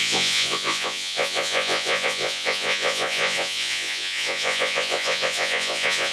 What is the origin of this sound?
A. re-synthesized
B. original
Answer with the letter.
A